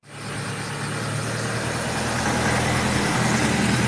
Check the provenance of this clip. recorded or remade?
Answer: recorded